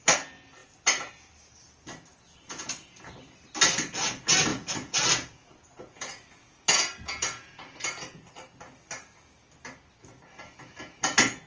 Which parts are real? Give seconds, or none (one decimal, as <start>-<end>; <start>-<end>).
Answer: 0.0-1.9; 3.1-4.5; 8.3-11.5